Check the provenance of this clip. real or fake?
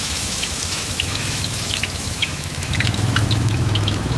fake